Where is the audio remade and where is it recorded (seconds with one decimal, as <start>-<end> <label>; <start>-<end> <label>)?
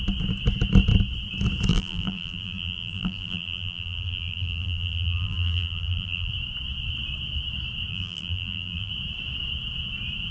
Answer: 0.0-1.7 recorded; 1.7-6.3 remade; 6.3-7.9 recorded; 7.9-8.9 remade; 8.9-10.3 recorded